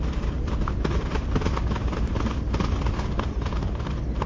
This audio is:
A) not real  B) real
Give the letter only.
B